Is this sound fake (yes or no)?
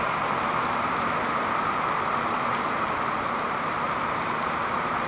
yes